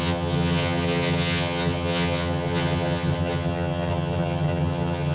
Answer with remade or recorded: remade